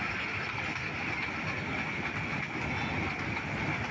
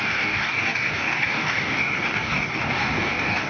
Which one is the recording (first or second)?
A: first